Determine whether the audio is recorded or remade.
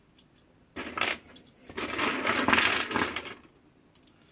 recorded